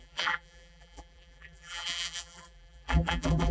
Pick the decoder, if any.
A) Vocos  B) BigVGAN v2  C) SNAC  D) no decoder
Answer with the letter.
B